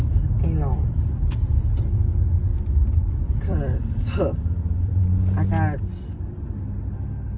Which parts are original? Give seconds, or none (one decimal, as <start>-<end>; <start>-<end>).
0.0-2.5; 5.0-7.4